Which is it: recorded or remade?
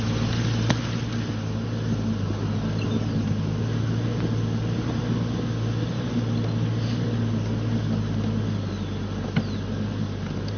recorded